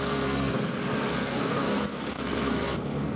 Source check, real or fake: fake